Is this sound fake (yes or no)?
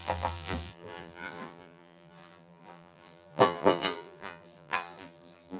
yes